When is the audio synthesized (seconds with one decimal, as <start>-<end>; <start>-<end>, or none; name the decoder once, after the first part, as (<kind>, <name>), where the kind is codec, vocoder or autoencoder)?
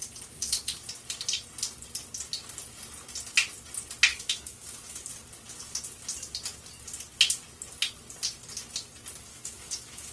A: 4.1-5.0 (autoencoder, DAC-VAE); 9.3-10.1